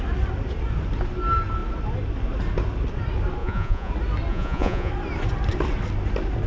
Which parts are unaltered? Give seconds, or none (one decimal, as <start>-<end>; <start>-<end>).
0.0-3.4; 3.9-4.3; 4.9-6.5